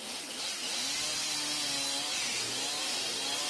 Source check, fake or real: real